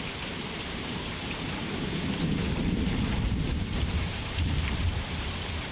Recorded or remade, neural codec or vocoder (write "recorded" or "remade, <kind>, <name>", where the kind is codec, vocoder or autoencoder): remade, vocoder, BigVGAN v2